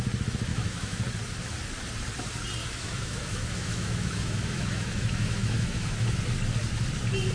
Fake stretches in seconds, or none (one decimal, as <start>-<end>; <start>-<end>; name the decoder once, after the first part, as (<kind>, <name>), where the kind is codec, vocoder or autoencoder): 0.5-1.0 (autoencoder, DAC-VAE); 2.6-6.2